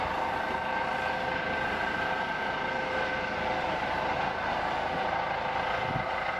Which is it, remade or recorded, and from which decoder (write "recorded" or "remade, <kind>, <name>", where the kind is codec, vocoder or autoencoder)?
recorded